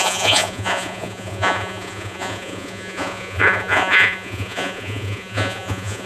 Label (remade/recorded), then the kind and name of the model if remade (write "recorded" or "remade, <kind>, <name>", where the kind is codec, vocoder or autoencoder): remade, vocoder, Vocos